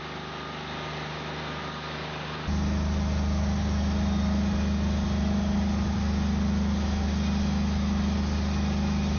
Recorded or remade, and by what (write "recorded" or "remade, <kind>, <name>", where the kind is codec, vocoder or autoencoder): recorded